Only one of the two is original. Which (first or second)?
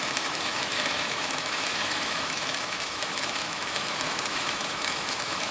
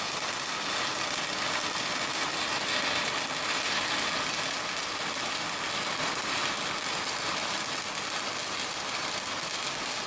second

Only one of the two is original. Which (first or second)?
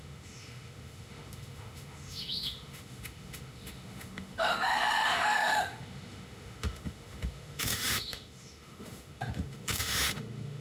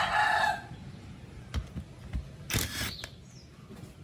second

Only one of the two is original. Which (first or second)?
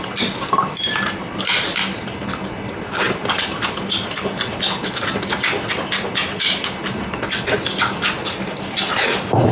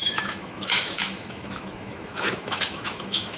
first